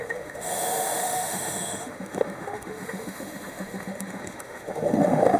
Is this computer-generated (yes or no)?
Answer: yes